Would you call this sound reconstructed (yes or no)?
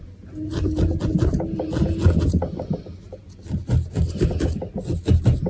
no